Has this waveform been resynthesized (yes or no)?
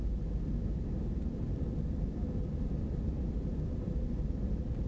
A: no